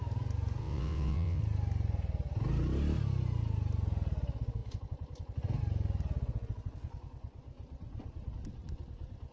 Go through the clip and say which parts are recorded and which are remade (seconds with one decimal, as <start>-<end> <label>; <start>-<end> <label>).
0.0-0.6 recorded; 0.6-1.4 remade; 1.4-9.3 recorded